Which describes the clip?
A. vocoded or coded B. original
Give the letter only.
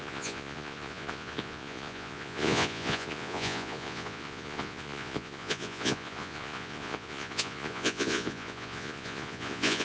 A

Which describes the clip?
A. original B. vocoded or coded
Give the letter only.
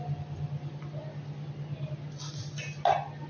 A